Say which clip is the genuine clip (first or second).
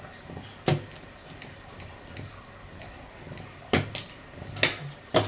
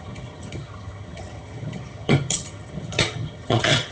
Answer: first